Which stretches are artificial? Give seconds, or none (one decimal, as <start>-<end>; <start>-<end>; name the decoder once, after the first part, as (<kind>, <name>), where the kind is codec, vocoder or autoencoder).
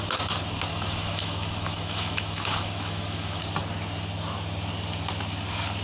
0.7-3.4 (autoencoder, DAC-VAE)